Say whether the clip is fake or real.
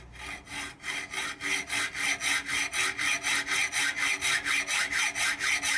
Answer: real